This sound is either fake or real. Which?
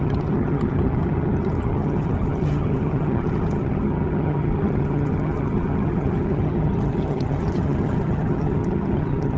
fake